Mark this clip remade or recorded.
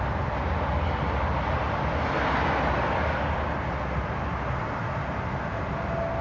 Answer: recorded